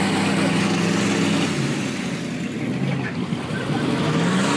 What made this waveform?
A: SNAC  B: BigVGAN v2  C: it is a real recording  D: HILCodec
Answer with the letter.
C